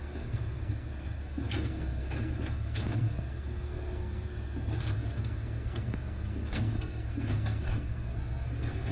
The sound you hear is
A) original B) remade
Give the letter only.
B